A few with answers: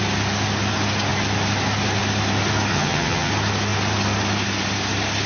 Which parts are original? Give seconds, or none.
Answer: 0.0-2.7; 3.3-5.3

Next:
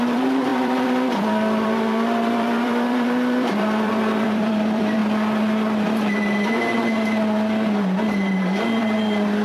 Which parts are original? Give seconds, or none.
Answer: 5.0-8.6